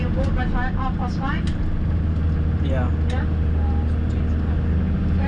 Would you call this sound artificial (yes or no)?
no